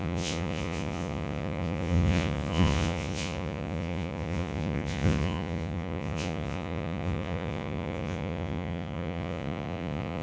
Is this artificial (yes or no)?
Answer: yes